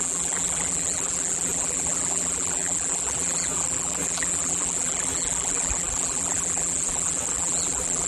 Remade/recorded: remade